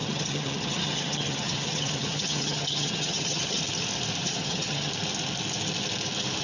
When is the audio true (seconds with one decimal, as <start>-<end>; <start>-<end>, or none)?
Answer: 3.6-4.2; 4.9-6.4